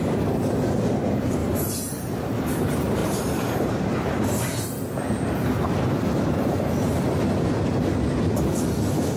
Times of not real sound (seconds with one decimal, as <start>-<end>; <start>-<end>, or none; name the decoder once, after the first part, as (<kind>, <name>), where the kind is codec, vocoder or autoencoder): 1.4-2.4 (vocoder, BigVGAN v2); 3.0-4.2